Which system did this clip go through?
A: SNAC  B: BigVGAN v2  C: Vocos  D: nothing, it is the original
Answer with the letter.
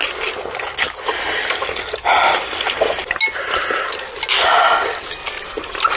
D